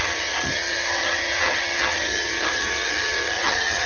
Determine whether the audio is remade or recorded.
remade